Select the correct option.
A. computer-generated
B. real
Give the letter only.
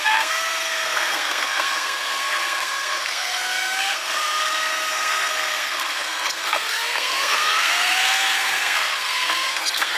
A